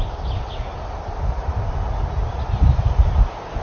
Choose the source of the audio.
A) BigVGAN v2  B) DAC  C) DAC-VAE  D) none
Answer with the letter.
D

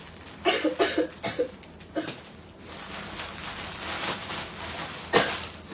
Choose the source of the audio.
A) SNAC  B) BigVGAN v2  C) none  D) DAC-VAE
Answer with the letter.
C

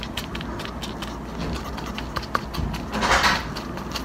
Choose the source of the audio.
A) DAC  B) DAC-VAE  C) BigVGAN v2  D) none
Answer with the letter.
D